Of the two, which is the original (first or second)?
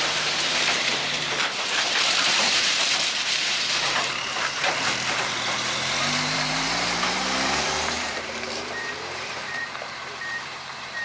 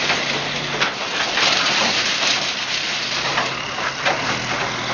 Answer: second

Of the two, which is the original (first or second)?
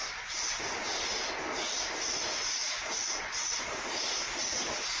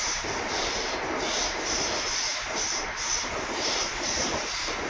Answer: first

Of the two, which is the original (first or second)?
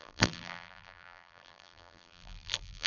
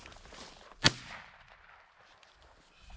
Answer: second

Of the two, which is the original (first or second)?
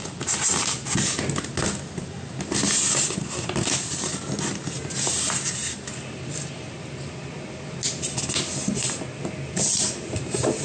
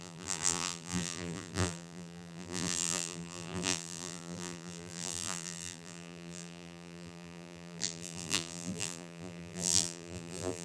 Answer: first